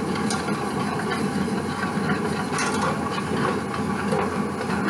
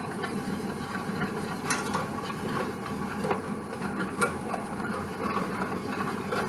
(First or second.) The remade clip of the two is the second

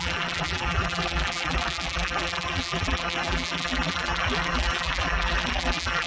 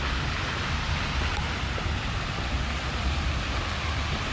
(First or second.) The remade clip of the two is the first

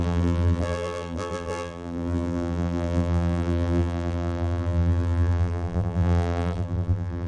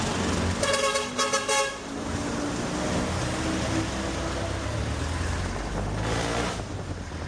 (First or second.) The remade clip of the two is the first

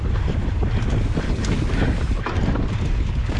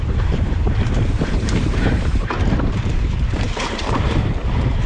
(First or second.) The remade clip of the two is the second